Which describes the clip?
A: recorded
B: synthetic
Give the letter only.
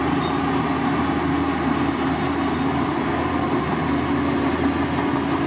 A